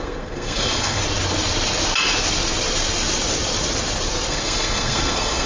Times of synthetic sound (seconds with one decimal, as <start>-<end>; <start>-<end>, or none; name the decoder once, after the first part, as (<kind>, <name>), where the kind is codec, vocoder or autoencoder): 0.0-1.0 (codec, SNAC); 4.3-5.5